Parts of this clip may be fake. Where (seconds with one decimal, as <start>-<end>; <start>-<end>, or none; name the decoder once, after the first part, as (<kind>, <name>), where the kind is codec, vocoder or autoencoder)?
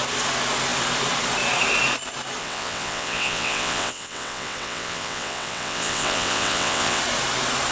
2.4-7.0 (vocoder, WaveNeXt)